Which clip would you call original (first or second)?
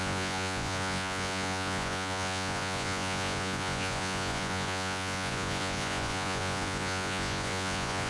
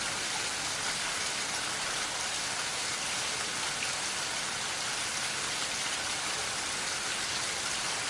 second